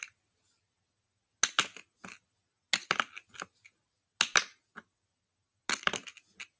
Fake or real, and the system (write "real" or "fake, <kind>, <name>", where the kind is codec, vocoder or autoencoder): real